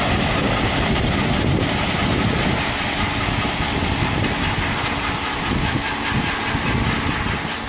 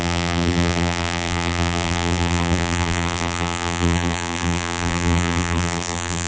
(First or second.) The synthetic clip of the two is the second